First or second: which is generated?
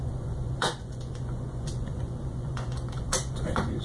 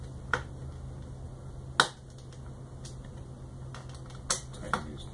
first